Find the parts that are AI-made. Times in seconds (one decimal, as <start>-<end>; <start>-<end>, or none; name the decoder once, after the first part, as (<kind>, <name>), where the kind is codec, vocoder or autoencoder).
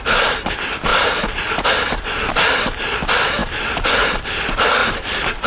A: 0.9-1.7 (vocoder, BigVGAN v2); 4.8-5.5